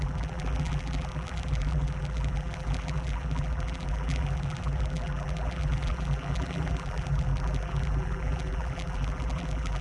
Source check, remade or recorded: remade